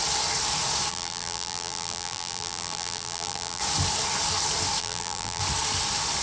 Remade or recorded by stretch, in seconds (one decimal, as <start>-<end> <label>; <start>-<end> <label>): 0.0-0.9 recorded; 0.9-3.6 remade; 3.6-4.8 recorded; 4.8-5.4 remade; 5.4-6.2 recorded

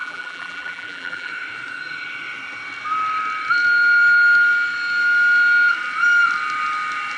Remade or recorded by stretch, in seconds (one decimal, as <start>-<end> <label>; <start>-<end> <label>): 0.0-1.3 remade; 1.3-7.2 recorded

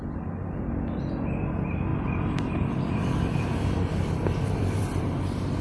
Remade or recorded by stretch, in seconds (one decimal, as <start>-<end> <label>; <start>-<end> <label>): 0.0-1.9 recorded; 1.9-5.0 remade; 5.0-5.6 recorded

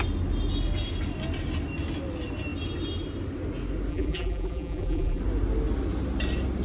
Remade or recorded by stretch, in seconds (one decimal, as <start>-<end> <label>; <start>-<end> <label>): 0.0-3.9 recorded; 3.9-5.2 remade; 5.2-6.6 recorded

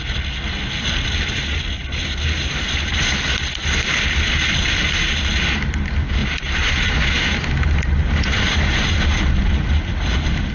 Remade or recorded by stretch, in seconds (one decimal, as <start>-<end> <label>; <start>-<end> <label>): 0.0-6.2 recorded; 6.2-7.0 remade; 7.0-8.0 recorded; 8.0-9.7 remade; 9.7-10.5 recorded